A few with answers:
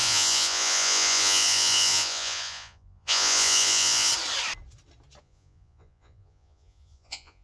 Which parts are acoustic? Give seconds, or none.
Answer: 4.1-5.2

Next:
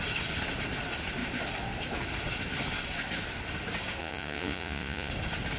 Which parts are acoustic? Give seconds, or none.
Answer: 0.0-4.0; 5.1-5.6

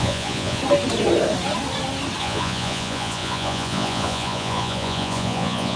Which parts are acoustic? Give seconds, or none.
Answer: 0.6-2.2

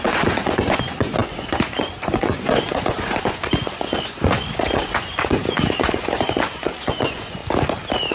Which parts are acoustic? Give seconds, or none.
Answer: 7.4-8.1

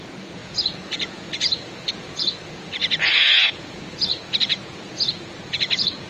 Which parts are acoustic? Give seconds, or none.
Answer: none

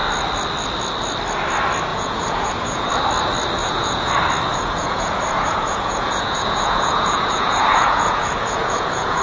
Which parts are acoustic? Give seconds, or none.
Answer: 0.0-1.9; 2.9-3.6; 4.1-4.5